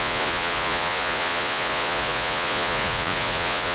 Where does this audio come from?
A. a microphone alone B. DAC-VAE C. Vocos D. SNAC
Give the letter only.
C